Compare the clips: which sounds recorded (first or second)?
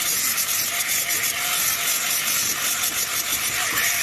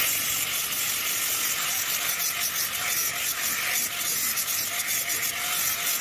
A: second